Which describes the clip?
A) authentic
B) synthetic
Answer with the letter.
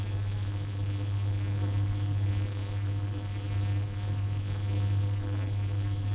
B